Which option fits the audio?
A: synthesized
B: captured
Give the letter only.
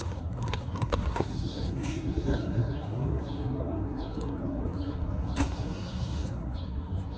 A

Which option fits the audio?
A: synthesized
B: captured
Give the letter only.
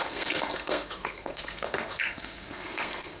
A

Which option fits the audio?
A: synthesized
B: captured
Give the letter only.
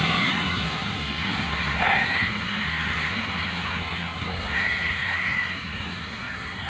A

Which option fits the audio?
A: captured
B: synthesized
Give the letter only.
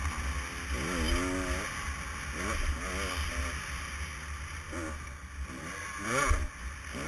A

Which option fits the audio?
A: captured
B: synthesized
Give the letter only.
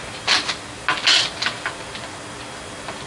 A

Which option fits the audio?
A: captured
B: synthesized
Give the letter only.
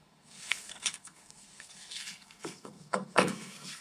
B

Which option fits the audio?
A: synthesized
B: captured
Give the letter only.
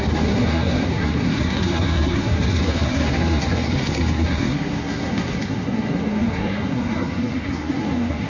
A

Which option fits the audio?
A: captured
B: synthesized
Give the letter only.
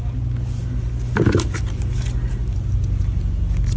A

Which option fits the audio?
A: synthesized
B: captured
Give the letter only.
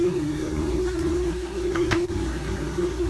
A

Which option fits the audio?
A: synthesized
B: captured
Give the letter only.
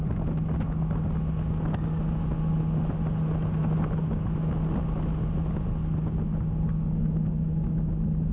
B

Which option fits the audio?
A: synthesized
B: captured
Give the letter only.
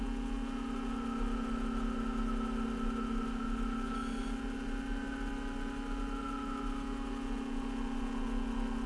B